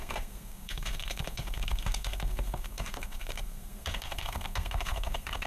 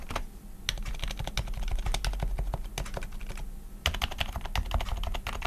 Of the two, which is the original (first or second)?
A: second